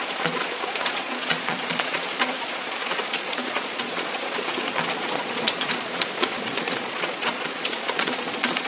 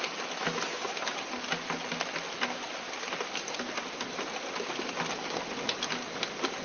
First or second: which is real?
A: second